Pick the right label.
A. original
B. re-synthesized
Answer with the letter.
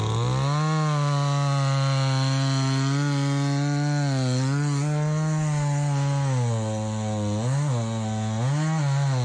A